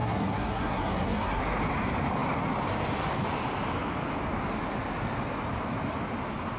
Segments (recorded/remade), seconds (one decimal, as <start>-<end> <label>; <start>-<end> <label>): 0.0-1.4 remade; 1.4-6.6 recorded